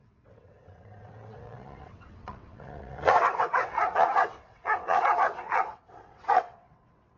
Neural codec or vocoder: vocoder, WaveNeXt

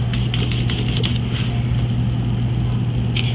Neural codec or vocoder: none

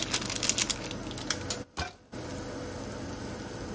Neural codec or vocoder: none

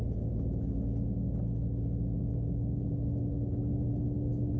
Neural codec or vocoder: none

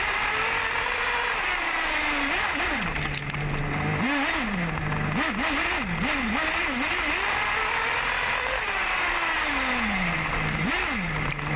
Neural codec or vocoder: none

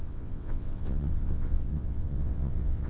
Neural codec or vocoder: vocoder, WaveNeXt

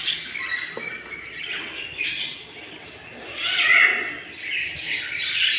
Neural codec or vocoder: none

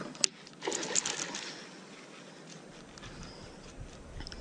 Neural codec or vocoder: none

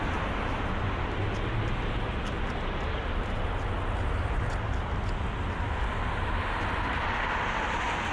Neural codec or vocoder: none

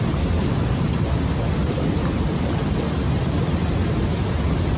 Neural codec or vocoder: none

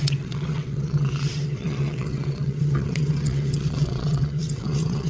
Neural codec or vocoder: vocoder, WaveNeXt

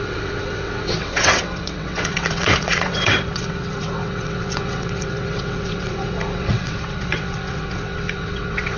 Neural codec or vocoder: vocoder, WaveNeXt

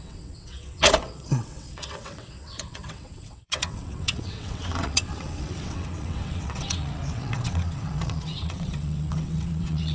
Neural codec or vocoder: vocoder, WaveNeXt